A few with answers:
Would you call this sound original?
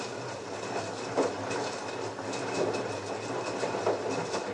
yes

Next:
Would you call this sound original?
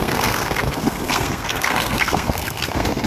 no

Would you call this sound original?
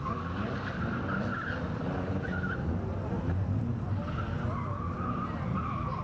yes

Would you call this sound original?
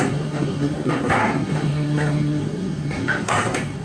no